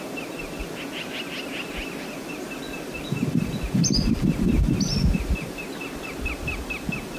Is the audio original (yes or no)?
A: yes